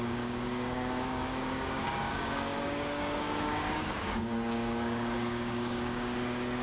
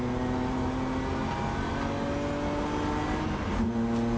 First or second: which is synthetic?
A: first